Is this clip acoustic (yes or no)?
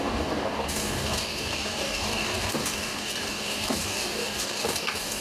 no